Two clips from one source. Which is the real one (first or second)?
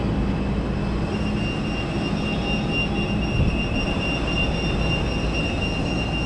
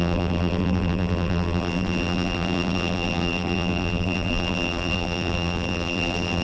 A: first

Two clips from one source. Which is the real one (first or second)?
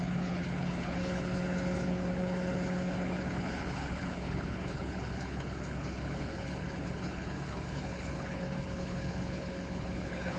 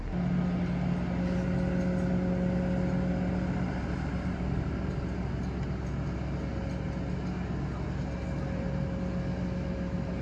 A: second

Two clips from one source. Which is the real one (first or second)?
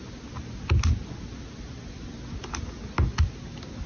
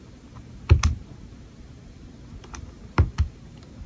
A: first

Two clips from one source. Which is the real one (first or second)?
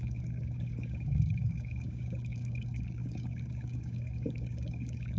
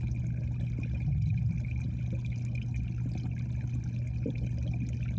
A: second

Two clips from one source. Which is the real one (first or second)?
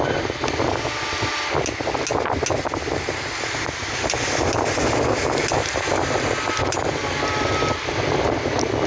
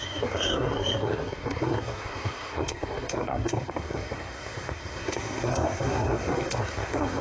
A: first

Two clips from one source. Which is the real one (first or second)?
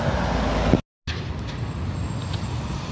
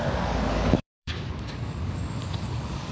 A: first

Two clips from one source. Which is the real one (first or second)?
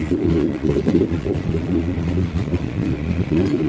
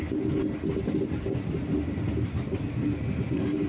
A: second